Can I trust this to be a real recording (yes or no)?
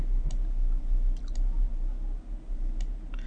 yes